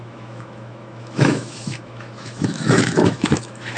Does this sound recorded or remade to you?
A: remade